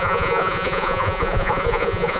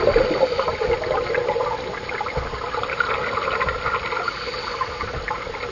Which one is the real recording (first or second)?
second